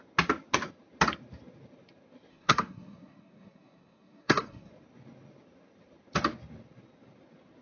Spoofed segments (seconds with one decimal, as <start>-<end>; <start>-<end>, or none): 2.3-4.7